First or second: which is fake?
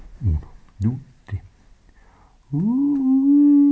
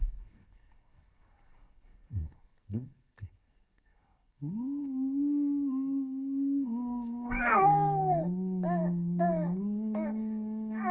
second